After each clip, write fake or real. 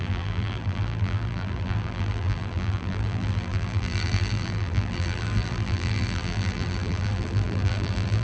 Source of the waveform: fake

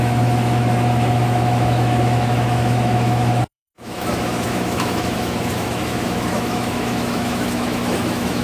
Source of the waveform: fake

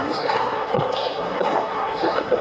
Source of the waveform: fake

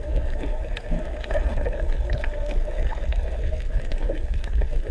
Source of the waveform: fake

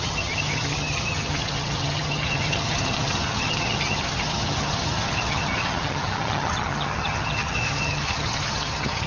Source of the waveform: fake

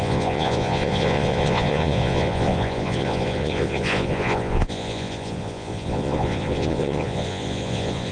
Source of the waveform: fake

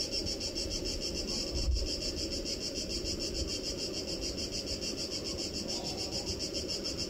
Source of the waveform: real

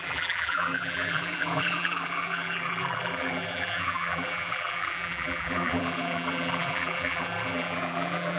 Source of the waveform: fake